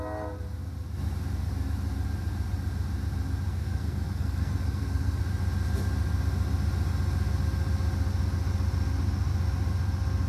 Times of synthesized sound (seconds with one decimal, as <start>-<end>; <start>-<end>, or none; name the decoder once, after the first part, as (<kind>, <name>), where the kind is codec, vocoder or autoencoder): 3.5-5.2 (codec, SNAC)